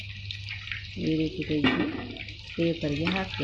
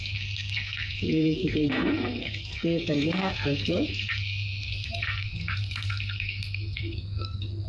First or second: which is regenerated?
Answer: second